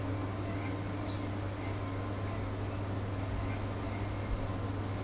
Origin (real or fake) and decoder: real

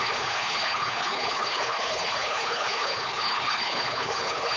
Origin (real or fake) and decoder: fake, codec, HILCodec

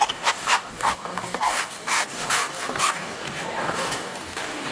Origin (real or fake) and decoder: fake, codec, DAC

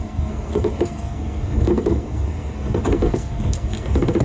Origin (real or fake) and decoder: fake, codec, SNAC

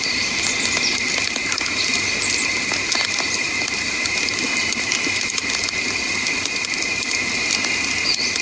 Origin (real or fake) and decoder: real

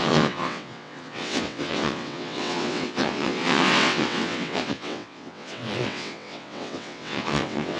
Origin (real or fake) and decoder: fake, vocoder, WaveNeXt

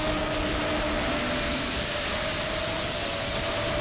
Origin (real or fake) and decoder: real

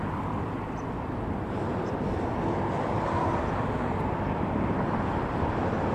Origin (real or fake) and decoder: real